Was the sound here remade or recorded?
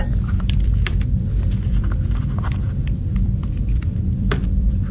remade